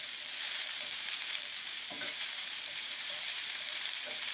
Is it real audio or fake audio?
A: fake